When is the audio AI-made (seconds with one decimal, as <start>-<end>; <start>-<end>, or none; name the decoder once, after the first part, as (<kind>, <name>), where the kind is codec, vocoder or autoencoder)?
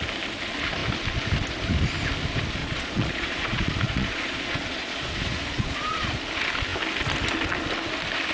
2.6-6.2 (vocoder, Vocos)